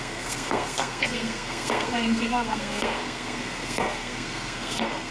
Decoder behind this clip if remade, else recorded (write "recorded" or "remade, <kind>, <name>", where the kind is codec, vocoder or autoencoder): remade, codec, SNAC